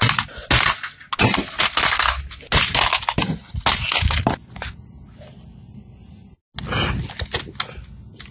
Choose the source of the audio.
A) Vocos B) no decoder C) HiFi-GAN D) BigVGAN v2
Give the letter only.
B